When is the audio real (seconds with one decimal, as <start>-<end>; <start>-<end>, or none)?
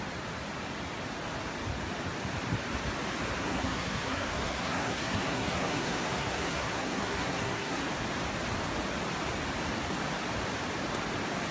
0.0-3.4; 7.8-11.5